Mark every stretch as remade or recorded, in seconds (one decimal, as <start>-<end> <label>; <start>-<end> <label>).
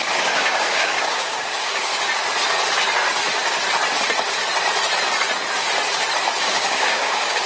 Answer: 0.0-1.9 remade; 1.9-6.4 recorded; 6.4-7.5 remade